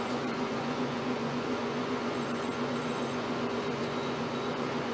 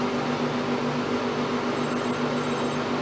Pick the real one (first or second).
second